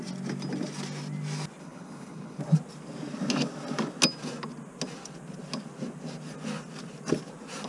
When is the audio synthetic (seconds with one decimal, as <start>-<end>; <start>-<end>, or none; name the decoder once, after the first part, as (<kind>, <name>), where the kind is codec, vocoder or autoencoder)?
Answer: 1.6-2.4 (codec, HILCodec)